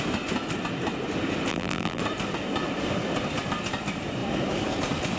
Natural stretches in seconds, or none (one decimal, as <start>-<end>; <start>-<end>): 0.0-1.5; 2.0-5.2